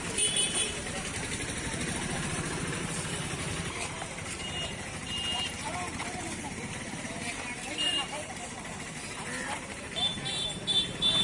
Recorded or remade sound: remade